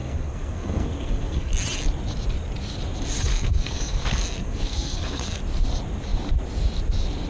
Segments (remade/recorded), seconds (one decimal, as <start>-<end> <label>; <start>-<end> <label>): 0.0-1.5 remade; 1.5-3.3 recorded; 3.3-5.4 remade; 5.4-7.3 recorded